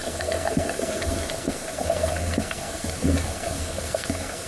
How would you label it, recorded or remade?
remade